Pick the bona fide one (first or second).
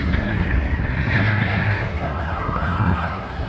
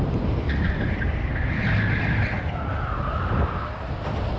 second